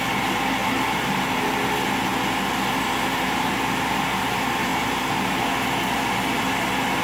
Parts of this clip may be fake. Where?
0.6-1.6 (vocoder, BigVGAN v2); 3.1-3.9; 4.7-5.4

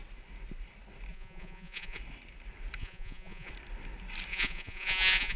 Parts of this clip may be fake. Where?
1.1-2.0 (vocoder, Vocos); 2.8-3.5; 4.3-5.4

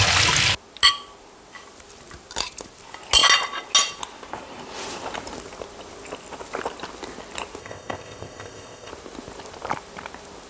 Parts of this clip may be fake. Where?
7.6-8.9 (codec, ZipCodec)

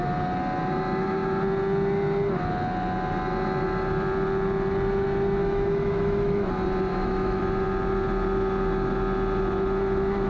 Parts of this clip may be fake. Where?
5.4-6.5 (autoencoder, DAC-VAE); 6.9-7.4